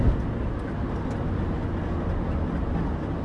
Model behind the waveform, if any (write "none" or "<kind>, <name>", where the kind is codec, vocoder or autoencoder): none